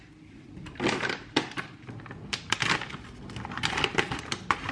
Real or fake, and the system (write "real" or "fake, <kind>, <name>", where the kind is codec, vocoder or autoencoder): real